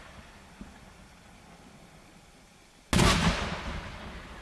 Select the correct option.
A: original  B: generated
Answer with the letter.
A